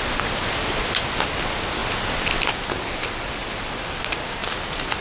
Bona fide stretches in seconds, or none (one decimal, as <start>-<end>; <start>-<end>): 0.0-1.8; 2.7-3.4; 4.0-4.4